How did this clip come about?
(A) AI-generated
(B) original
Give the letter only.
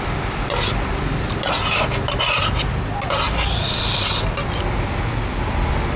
B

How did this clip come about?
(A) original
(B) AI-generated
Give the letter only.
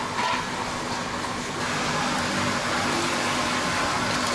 A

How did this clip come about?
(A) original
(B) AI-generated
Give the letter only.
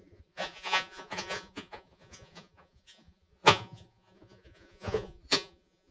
B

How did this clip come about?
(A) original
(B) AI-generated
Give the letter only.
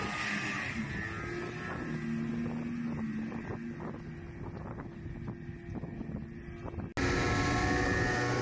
A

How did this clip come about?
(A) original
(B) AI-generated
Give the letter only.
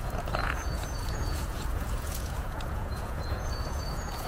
B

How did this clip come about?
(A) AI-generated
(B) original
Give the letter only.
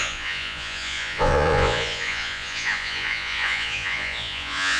A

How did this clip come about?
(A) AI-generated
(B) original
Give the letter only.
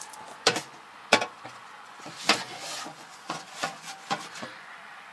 A